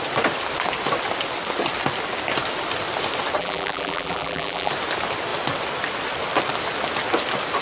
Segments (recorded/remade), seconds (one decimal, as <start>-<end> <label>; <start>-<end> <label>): 0.0-3.4 recorded; 3.4-4.7 remade; 4.7-7.6 recorded